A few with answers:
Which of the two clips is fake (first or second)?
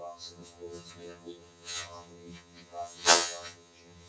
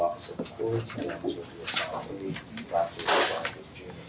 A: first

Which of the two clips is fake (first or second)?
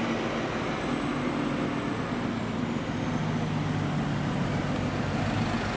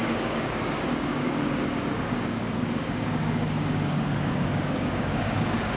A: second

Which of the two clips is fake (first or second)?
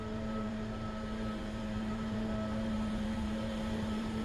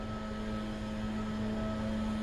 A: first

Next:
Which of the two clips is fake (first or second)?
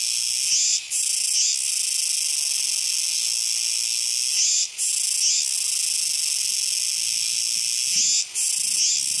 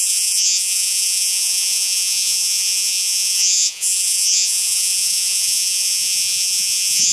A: second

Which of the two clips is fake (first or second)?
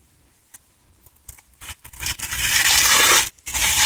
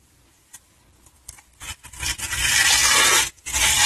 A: first